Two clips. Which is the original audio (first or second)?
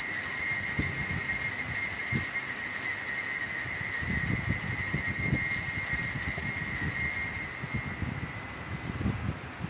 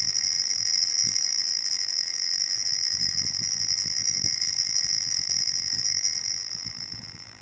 first